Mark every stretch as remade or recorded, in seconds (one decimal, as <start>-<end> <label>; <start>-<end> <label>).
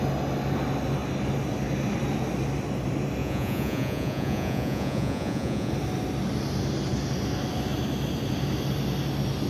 0.0-3.2 recorded; 3.2-5.7 remade; 5.7-9.5 recorded